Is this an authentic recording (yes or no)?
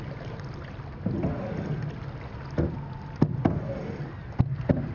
yes